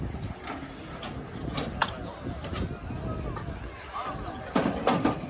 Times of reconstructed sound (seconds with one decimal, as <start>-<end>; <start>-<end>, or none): none